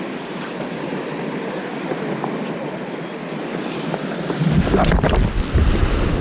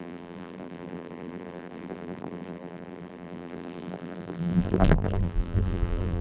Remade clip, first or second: second